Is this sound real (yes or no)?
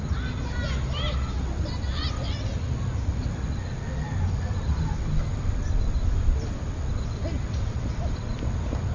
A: yes